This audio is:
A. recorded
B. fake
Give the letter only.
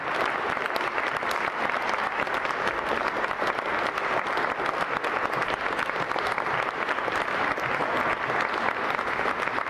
A